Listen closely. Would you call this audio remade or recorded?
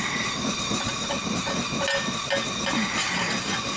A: recorded